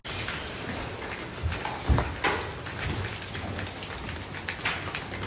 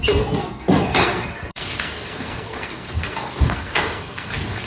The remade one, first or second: second